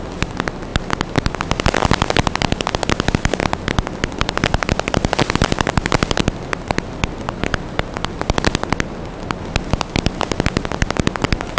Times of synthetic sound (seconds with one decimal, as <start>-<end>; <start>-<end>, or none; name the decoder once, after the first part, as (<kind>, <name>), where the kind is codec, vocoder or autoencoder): none